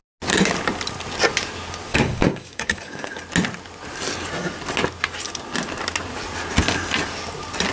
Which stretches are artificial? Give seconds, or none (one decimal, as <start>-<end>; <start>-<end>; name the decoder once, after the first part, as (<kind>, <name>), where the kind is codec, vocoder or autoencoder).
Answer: 1.9-3.2 (codec, DAC)